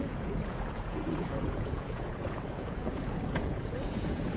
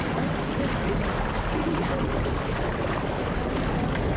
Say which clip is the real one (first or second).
second